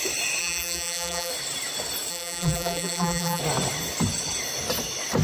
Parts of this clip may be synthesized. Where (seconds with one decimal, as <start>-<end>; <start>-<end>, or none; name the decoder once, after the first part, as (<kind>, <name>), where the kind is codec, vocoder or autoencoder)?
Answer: 0.4-1.3 (vocoder, BigVGAN v2); 2.1-3.4